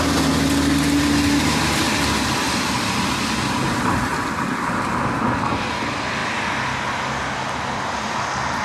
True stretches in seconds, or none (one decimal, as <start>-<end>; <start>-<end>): 0.0-8.6